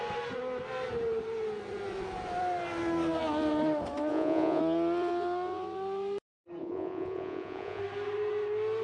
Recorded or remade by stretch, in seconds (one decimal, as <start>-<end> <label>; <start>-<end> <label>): 0.0-4.1 recorded; 4.1-4.6 remade; 4.6-6.6 recorded; 6.6-7.8 remade; 7.8-8.8 recorded